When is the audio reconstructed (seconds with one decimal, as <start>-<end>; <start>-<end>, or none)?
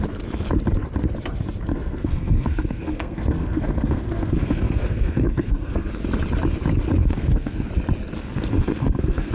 1.7-6.0; 7.0-7.7; 8.2-9.3